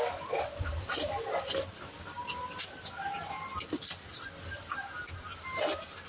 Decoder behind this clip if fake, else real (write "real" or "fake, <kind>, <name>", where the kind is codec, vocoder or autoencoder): real